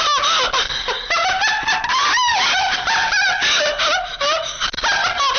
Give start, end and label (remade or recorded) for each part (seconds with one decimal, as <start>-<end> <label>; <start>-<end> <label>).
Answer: 0.0-5.4 recorded